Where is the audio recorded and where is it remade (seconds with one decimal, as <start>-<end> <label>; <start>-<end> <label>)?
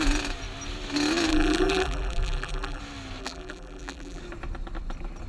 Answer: 0.0-1.3 recorded; 1.3-2.8 remade; 2.8-3.2 recorded; 3.2-4.2 remade; 4.2-5.3 recorded